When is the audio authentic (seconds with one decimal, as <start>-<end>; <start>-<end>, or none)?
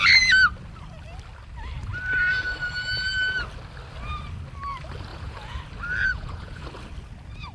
0.0-5.1; 5.6-6.0; 6.7-7.5